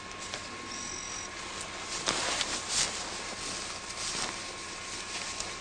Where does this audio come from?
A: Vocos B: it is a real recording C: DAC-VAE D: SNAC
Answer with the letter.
B